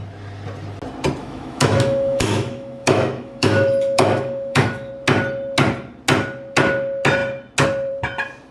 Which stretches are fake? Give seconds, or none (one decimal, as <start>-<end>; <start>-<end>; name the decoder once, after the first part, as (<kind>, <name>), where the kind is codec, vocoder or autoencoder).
1.2-4.9 (autoencoder, DAC-VAE)